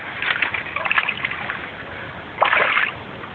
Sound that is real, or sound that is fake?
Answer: real